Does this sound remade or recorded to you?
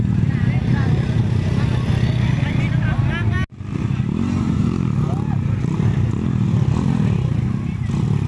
recorded